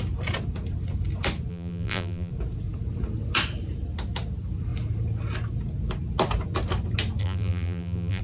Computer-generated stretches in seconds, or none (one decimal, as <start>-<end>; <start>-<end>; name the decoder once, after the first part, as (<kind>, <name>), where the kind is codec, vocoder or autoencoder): 1.5-2.3 (vocoder, BigVGAN v2); 7.2-8.2